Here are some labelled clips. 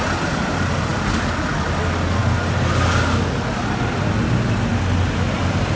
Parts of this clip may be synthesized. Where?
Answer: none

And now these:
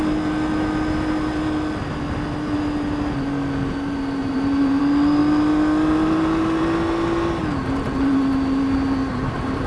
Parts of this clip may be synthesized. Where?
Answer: 4.2-4.8 (vocoder, BigVGAN v2); 9.0-9.7

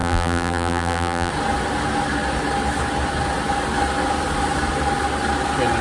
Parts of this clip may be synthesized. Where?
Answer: 0.0-1.3 (vocoder, BigVGAN v2)

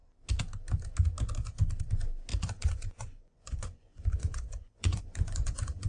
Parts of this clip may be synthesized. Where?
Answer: 2.3-5.9 (vocoder, Vocos)

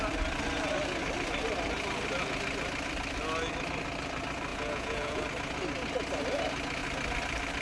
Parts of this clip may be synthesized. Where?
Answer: 4.5-5.2 (vocoder, Vocos)